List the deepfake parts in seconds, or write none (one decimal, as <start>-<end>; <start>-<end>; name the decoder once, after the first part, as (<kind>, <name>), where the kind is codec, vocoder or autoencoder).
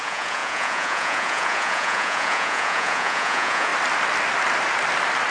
0.0-3.7 (vocoder, Vocos)